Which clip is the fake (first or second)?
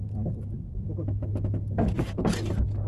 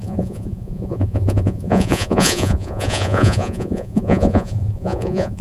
second